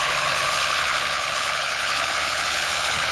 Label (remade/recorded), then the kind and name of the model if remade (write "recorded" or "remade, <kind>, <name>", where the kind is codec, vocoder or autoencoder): remade, codec, HILCodec